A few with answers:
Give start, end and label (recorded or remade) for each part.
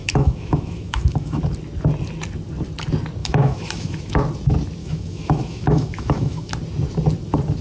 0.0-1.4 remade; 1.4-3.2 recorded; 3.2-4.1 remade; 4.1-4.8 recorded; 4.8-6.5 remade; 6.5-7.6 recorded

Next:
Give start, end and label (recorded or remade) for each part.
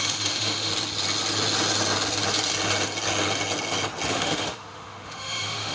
0.0-0.7 remade; 0.7-4.1 recorded; 4.1-5.7 remade